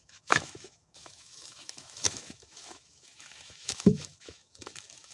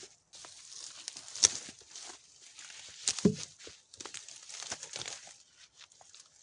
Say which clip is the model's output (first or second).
first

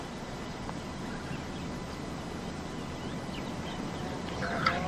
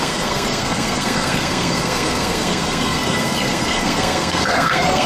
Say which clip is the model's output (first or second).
second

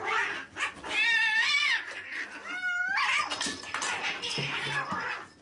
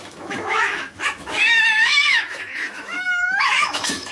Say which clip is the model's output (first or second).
second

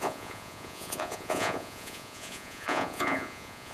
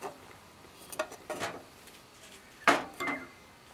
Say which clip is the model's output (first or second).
first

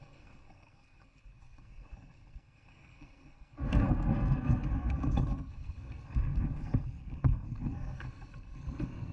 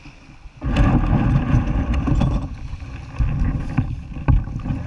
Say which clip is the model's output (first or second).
first